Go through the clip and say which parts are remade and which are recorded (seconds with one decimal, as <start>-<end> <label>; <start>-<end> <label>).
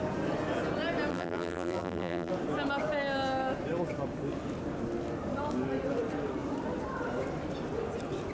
0.0-1.1 recorded; 1.1-2.3 remade; 2.3-8.3 recorded